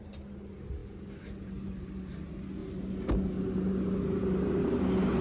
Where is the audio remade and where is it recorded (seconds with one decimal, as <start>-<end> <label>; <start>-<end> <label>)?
0.0-5.2 recorded